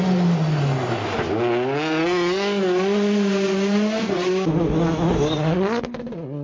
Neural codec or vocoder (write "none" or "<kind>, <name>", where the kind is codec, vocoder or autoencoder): none